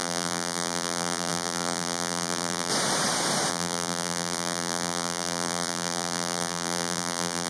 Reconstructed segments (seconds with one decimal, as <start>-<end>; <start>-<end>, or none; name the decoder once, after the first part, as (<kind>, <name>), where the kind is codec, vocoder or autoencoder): 0.0-2.7 (vocoder, BigVGAN v2); 3.5-7.5